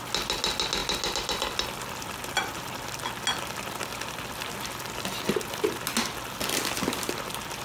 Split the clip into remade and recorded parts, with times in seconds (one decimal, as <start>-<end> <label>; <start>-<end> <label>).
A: 0.0-7.6 recorded